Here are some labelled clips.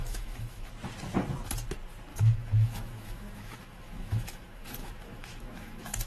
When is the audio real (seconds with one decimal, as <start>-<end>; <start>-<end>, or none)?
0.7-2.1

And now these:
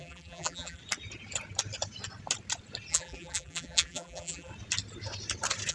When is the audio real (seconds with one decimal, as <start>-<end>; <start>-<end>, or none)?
0.8-2.9; 4.5-5.7

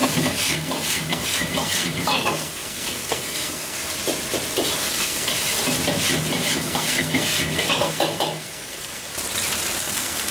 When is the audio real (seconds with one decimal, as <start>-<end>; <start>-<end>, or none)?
3.8-4.8; 5.3-6.5; 9.1-9.8

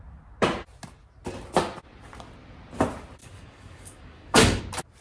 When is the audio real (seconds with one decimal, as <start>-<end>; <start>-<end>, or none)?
0.0-3.2; 4.6-5.0